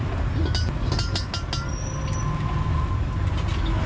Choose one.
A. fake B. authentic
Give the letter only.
B